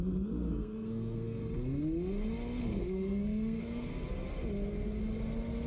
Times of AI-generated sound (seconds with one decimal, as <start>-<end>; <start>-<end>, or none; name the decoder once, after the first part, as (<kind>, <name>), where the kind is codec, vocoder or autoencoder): 0.0-1.4 (codec, SNAC); 2.6-3.9